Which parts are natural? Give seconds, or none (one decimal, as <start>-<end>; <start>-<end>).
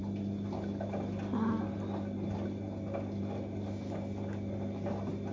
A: 0.0-5.3